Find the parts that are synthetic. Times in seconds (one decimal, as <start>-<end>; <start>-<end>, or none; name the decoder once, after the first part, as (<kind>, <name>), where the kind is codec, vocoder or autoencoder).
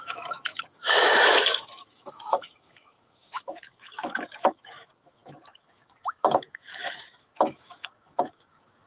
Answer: 0.0-8.9 (autoencoder, DAC-VAE)